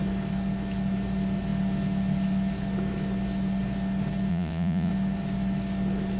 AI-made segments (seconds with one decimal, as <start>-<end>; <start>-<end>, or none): 4.3-4.9

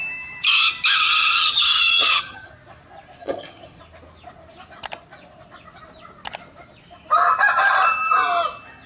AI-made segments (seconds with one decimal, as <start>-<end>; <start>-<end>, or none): 1.0-2.5; 3.2-3.8

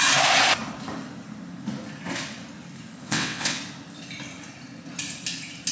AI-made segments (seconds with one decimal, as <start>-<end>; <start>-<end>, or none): 3.0-3.6

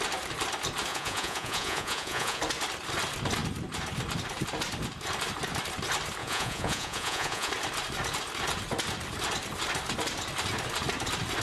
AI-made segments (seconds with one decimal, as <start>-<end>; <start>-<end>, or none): 0.9-2.4; 6.2-7.5

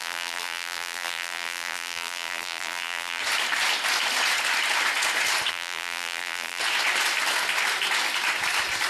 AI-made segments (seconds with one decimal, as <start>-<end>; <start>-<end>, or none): 0.0-3.2; 5.5-6.6